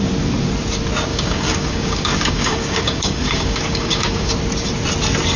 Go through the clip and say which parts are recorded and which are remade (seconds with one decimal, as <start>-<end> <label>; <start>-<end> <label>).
0.0-1.1 recorded; 1.1-4.3 remade; 4.3-5.4 recorded